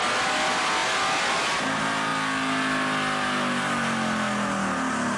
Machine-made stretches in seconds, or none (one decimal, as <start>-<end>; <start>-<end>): none